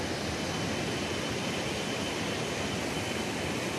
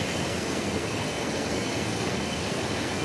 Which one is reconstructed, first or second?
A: second